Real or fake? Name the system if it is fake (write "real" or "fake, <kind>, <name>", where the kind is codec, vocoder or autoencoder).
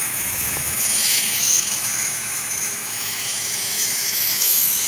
fake, autoencoder, DAC-VAE